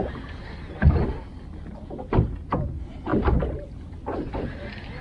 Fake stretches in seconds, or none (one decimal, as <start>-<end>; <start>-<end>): none